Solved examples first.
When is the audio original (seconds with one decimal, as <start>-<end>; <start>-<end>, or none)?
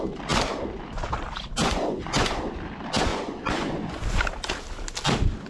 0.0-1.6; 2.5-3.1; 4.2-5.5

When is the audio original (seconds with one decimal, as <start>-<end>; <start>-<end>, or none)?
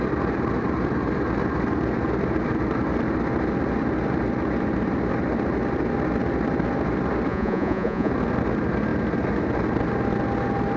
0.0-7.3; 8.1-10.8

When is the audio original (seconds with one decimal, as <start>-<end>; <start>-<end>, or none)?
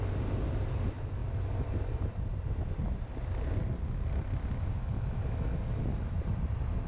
0.0-6.9